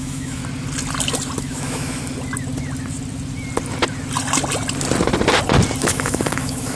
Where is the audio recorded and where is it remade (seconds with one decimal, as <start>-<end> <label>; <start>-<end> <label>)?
0.0-0.4 remade; 0.4-1.4 recorded; 1.4-2.0 remade; 2.0-5.8 recorded; 5.8-6.8 remade